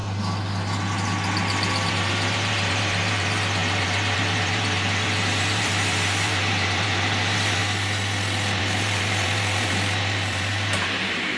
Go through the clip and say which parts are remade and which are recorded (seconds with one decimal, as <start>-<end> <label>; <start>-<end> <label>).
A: 0.0-1.9 recorded; 1.9-7.6 remade; 7.6-8.6 recorded; 8.6-11.4 remade